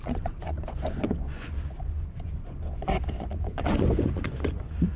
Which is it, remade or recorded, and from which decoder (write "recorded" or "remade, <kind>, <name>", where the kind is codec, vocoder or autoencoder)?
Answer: remade, vocoder, Vocos